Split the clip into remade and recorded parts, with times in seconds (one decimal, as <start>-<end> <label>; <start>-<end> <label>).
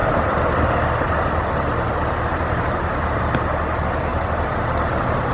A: 0.0-4.1 recorded; 4.1-4.6 remade; 4.6-5.3 recorded